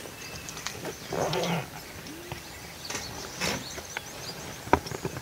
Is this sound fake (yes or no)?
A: no